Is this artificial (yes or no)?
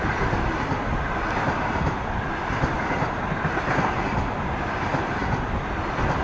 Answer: no